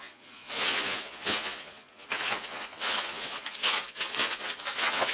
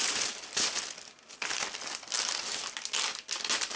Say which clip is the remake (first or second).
first